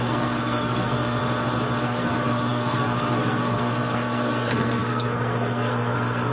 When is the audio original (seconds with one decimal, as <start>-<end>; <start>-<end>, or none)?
1.2-1.8